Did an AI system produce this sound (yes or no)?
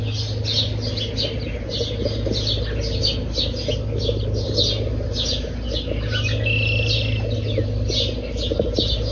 no